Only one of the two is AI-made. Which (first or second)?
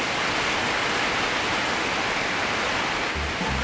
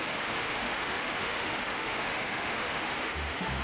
second